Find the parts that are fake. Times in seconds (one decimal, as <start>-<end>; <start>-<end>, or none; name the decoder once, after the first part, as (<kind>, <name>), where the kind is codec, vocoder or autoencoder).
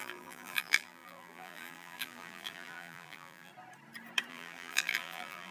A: 0.0-3.5 (vocoder, BigVGAN v2); 4.3-5.5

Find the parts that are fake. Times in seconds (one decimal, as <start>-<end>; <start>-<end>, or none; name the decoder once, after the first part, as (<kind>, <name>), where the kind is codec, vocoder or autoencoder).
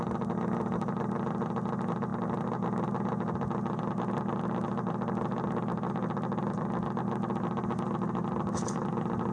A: none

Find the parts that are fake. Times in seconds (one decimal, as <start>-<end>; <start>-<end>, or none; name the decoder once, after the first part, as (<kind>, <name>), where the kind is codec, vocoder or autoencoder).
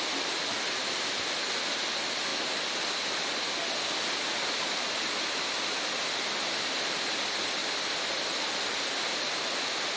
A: 2.3-2.8 (vocoder, BigVGAN v2); 7.6-9.4